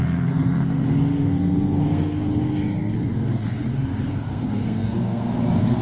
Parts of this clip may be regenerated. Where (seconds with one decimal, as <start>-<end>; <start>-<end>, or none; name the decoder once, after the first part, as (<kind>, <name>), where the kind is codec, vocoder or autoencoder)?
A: 0.0-5.8 (codec, SNAC)